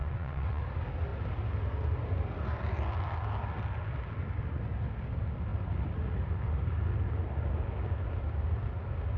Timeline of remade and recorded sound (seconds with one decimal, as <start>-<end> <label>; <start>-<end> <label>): 0.0-0.6 remade; 0.6-9.2 recorded